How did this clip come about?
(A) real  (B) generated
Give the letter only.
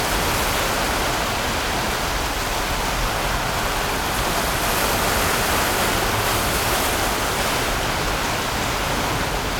A